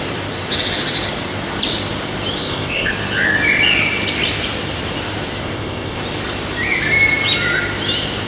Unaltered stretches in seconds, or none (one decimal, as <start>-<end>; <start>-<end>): 0.0-2.4; 2.9-5.4; 6.0-8.3